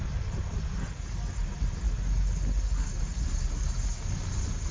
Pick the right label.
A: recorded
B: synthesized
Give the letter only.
A